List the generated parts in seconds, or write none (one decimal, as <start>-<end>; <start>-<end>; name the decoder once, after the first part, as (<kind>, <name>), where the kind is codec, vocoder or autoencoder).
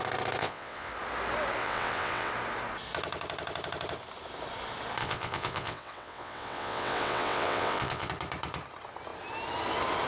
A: 0.4-0.9 (vocoder, WaveNeXt); 1.6-2.3; 5.0-8.1